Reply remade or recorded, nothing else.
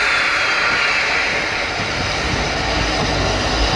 recorded